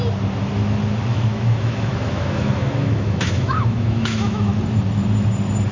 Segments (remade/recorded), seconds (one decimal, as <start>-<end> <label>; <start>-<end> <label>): 0.0-1.1 recorded; 1.1-4.5 remade; 4.5-5.7 recorded